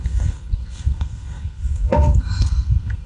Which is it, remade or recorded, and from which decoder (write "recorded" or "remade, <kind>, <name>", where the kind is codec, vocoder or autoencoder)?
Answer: remade, codec, SNAC